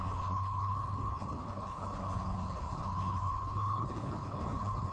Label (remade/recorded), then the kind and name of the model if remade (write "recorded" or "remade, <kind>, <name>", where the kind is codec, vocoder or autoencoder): remade, codec, HILCodec